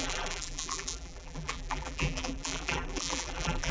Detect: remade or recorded remade